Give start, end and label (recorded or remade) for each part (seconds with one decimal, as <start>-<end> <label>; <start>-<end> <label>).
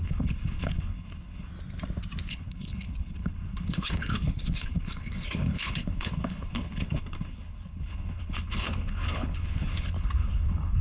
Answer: 0.0-1.5 remade; 1.5-2.3 recorded; 2.3-10.8 remade